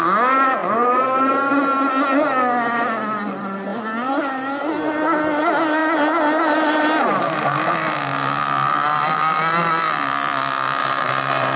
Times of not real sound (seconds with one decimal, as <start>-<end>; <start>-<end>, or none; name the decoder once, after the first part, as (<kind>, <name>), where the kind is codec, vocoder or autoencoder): 0.6-1.5 (vocoder, BigVGAN v2); 10.8-11.6